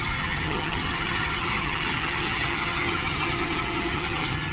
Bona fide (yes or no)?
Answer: no